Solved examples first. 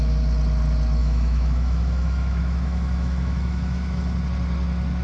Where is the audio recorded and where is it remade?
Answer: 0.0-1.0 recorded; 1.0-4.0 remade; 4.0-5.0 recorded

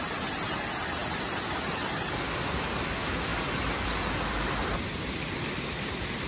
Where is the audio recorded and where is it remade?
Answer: 0.0-1.0 recorded; 1.0-2.0 remade; 2.0-6.3 recorded

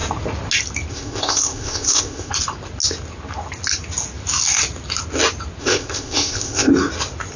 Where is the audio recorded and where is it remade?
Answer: 0.0-0.9 recorded; 0.9-2.3 remade; 2.3-5.6 recorded; 5.6-6.7 remade; 6.7-7.4 recorded